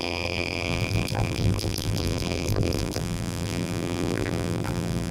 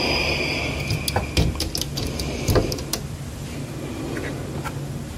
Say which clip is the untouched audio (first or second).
second